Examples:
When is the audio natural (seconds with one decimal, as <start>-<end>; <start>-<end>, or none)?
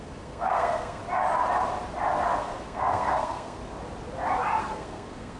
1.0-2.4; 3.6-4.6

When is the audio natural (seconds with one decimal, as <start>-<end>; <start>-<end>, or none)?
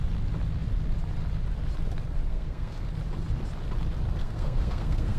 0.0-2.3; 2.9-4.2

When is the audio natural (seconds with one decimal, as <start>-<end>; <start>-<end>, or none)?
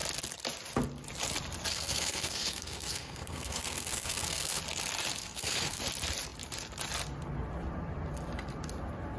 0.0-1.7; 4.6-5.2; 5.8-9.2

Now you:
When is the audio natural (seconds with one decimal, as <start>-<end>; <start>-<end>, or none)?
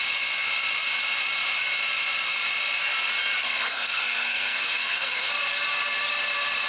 0.0-3.4; 5.3-6.7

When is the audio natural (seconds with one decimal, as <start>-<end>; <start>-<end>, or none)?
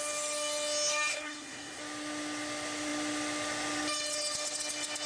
0.0-1.1; 1.8-5.1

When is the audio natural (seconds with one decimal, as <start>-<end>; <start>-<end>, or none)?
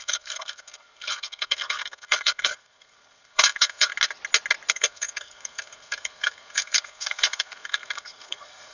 3.9-4.7